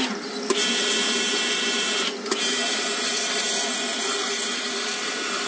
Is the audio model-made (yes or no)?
yes